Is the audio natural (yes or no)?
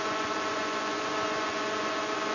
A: no